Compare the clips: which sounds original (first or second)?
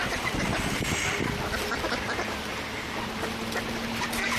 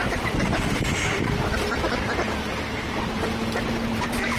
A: first